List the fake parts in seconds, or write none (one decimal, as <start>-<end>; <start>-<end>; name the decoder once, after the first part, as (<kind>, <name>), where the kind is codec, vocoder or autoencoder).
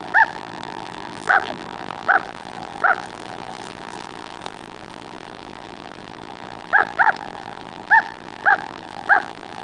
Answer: 0.0-9.6 (vocoder, BigVGAN v2)